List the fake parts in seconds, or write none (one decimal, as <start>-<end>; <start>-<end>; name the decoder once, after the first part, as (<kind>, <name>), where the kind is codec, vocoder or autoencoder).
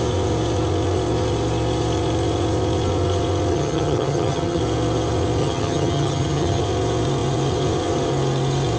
3.5-4.6 (vocoder, HiFi-GAN); 5.4-6.6